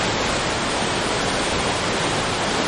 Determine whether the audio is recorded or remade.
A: recorded